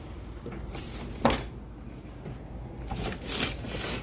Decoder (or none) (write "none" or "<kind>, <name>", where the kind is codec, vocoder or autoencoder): none